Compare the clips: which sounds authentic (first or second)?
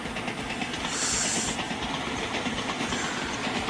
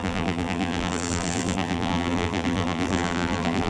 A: first